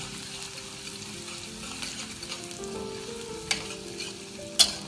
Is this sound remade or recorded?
recorded